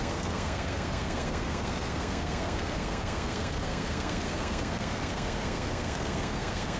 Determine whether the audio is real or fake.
fake